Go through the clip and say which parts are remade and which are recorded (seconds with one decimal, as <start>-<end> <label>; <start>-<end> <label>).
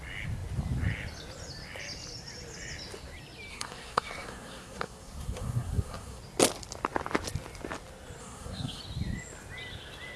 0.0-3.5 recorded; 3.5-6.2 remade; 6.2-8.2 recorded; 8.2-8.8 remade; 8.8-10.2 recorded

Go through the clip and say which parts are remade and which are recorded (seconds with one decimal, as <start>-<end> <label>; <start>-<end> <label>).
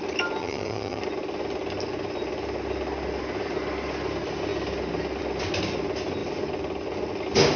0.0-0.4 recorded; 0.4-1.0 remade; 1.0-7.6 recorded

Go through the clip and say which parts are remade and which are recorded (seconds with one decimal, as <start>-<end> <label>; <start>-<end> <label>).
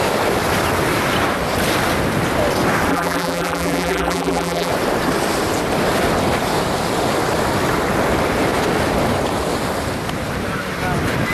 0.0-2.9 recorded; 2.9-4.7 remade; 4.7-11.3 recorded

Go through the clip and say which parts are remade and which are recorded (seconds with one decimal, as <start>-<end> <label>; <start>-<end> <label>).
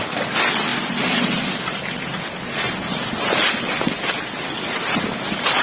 0.0-5.6 recorded